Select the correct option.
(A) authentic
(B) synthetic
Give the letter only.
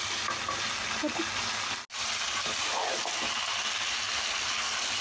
A